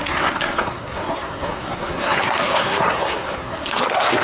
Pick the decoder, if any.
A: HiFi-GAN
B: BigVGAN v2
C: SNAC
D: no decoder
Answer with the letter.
C